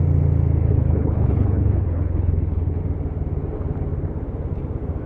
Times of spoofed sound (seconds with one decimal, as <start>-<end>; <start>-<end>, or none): 0.7-2.8